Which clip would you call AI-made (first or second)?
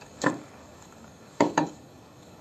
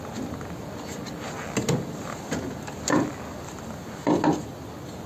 first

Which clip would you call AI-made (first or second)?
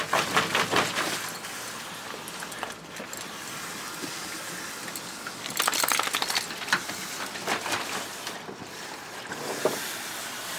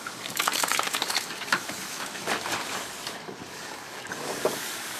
second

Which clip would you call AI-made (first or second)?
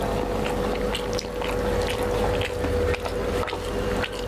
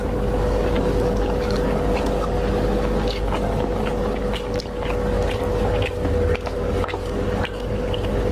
second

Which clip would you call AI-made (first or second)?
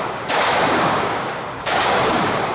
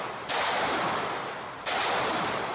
first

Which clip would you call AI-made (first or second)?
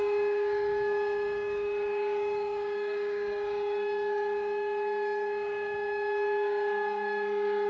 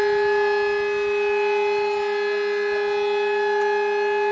first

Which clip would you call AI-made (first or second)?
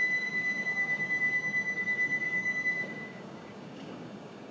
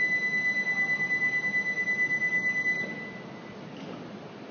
first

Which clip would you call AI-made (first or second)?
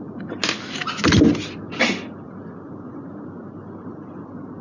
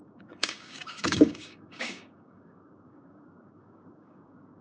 second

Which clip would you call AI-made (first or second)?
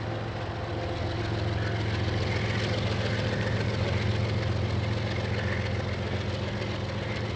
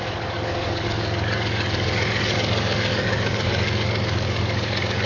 second